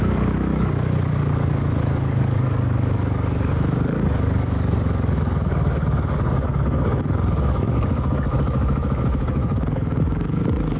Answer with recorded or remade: remade